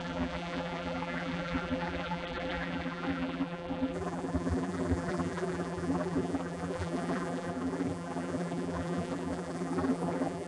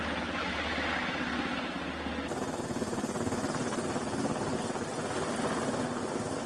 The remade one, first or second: first